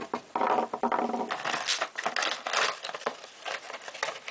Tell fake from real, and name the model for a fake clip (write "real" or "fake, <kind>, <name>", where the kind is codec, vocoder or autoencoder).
real